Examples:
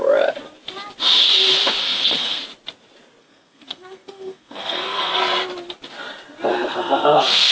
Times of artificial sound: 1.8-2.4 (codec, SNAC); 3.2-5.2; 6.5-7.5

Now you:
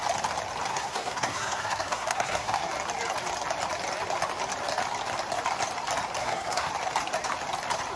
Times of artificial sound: 0.7-2.7 (codec, SNAC); 6.2-6.7

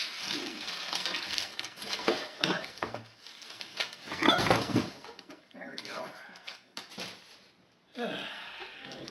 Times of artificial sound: 0.0-6.9 (codec, SNAC); 8.3-9.1

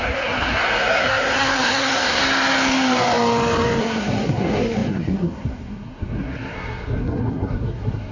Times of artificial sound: 0.0-2.2 (codec, SNAC); 3.8-8.1

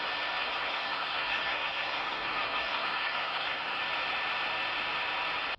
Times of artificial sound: 0.4-3.8 (codec, SNAC)

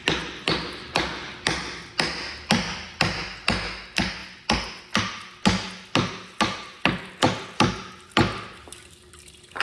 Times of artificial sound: none